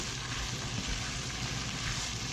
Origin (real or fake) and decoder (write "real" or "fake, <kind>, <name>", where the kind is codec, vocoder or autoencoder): real